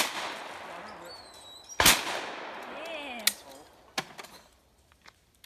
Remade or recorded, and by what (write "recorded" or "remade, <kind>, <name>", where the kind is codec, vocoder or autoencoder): recorded